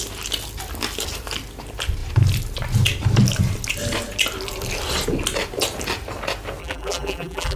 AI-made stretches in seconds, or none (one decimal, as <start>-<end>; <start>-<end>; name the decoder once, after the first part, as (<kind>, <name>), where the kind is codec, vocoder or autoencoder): 6.6-7.6 (vocoder, BigVGAN v2)